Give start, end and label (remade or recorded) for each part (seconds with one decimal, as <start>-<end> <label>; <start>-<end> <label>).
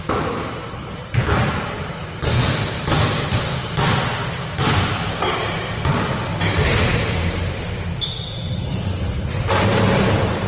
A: 0.0-10.5 recorded